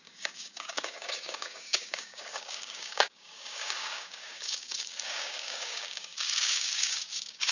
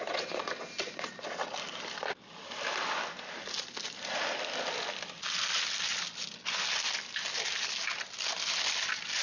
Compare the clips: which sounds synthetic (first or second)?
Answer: first